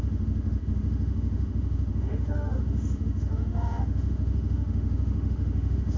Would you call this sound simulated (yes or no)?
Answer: yes